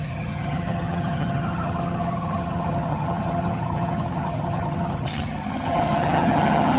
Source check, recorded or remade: remade